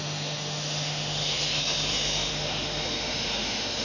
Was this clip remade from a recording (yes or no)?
yes